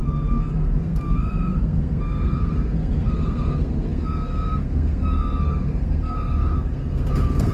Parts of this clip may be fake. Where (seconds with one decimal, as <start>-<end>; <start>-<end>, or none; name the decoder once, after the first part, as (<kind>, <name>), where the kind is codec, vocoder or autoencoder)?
0.0-7.5 (codec, SNAC)